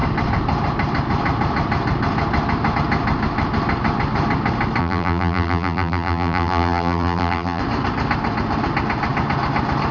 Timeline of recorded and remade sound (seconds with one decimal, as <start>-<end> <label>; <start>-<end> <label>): 0.0-4.8 recorded; 4.8-7.6 remade; 7.6-9.9 recorded